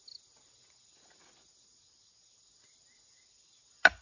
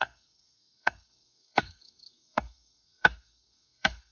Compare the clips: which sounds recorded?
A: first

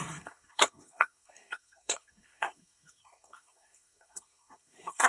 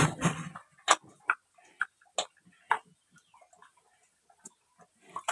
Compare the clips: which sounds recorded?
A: second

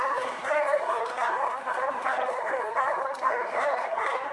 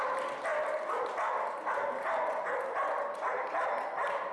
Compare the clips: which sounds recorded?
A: second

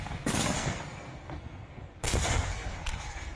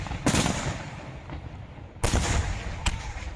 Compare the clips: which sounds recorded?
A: second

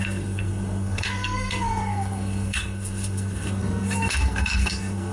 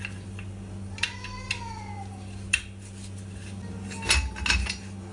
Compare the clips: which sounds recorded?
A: second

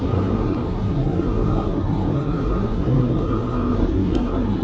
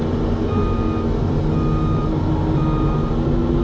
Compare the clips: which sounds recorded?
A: second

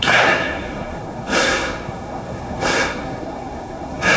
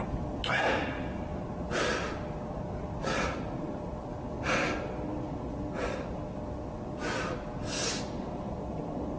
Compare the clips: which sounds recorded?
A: second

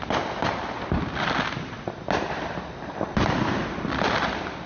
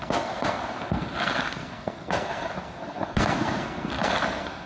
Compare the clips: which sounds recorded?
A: first